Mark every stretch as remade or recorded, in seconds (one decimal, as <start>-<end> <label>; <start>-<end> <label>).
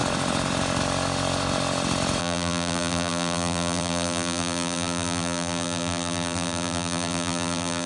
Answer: 0.0-2.2 recorded; 2.2-7.9 remade